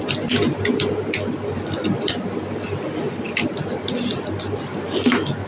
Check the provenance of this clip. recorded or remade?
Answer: recorded